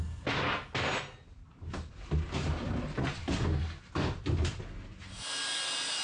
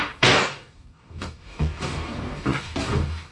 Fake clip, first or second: second